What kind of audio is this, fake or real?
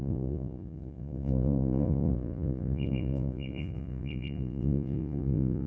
fake